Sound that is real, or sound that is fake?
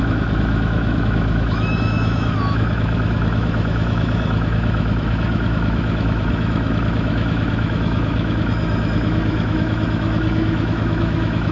fake